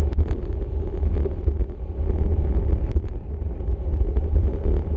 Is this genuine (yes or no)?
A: yes